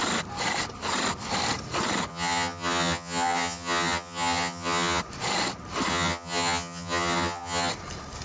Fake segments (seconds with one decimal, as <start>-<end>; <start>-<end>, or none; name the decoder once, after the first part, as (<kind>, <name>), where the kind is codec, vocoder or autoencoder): 2.1-5.0 (vocoder, HiFi-GAN); 5.9-7.7